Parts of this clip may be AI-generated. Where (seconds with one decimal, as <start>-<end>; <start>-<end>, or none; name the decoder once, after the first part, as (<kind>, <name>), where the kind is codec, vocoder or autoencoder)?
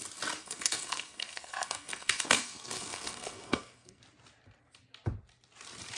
0.4-4.0 (codec, SNAC)